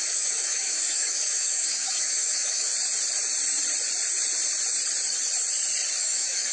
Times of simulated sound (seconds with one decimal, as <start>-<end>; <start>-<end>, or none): 0.0-2.7; 6.0-6.5